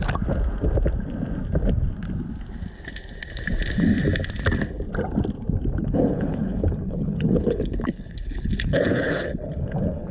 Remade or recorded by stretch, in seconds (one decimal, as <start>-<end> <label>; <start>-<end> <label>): 0.0-5.8 recorded; 5.8-10.1 remade